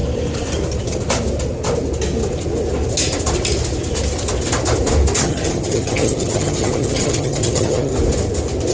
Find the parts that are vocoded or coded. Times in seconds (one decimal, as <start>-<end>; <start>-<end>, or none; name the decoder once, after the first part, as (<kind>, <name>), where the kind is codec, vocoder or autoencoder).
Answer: 5.2-7.9 (vocoder, HiFi-GAN)